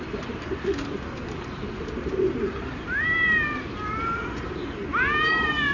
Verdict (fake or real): fake